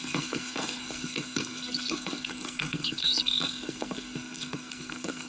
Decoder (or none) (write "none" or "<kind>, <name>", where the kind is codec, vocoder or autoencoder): codec, SNAC